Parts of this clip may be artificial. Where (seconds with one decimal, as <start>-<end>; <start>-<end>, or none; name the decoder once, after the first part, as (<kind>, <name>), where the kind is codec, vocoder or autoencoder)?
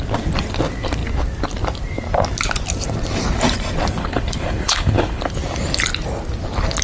4.0-5.2 (codec, HILCodec)